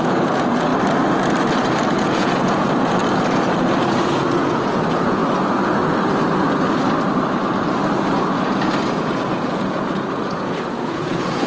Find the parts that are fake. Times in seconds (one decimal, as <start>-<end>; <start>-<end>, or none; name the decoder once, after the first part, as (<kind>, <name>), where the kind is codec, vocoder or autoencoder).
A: 0.0-0.7 (vocoder, Vocos); 1.9-3.0; 3.8-5.2; 8.9-11.5